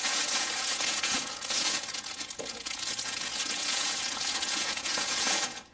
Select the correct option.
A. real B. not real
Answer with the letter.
B